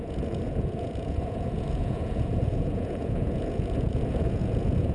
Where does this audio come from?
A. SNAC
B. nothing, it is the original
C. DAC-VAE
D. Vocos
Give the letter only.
D